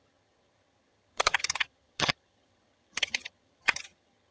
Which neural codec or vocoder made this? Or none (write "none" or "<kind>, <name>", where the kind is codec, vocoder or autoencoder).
vocoder, HiFi-GAN